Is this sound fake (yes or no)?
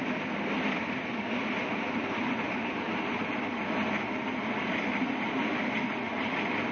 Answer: no